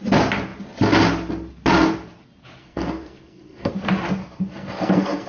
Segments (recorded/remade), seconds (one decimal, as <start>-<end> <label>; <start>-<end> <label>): 0.0-2.6 recorded; 2.6-3.7 remade; 3.7-4.2 recorded; 4.2-5.3 remade